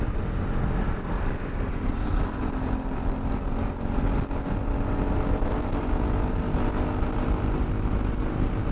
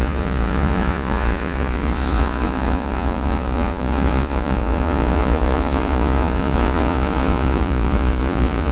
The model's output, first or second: second